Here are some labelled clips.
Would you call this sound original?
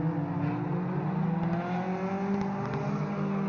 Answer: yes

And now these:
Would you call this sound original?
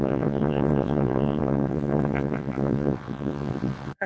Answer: no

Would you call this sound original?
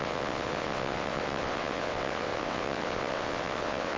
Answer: no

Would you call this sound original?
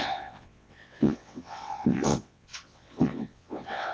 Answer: no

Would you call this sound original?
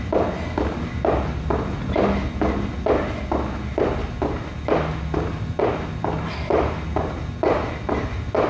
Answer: yes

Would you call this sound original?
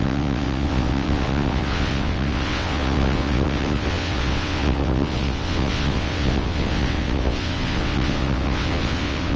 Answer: no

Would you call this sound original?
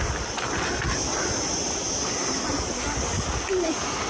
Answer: yes